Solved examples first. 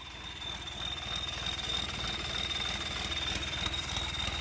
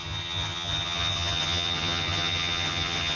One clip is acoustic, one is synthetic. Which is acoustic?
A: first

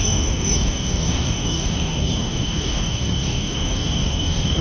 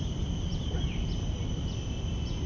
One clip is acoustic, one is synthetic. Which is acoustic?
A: second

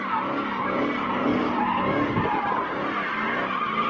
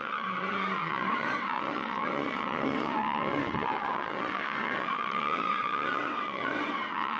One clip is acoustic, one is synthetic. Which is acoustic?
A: first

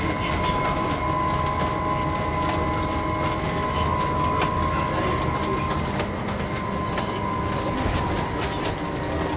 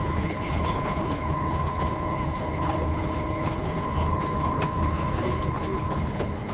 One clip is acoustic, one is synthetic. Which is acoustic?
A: first